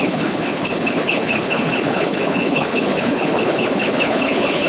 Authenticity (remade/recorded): remade